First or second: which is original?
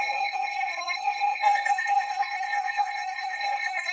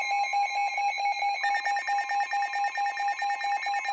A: second